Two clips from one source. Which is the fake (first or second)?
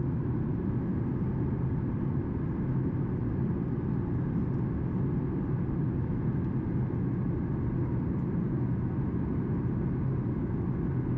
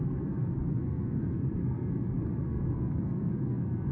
second